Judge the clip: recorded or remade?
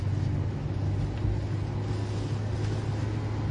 recorded